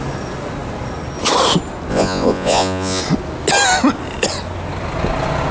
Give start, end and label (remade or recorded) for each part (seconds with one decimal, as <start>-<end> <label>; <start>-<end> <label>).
0.0-1.9 recorded; 1.9-3.0 remade; 3.0-5.5 recorded